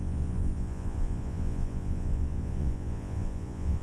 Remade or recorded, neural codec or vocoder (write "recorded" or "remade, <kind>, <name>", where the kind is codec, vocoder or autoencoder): remade, vocoder, Vocos